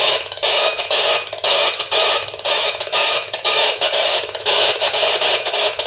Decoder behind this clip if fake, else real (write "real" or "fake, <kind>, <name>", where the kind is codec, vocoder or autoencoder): fake, autoencoder, DAC-VAE